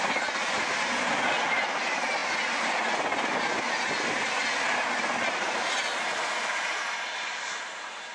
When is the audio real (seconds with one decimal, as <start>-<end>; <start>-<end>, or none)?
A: 0.0-8.1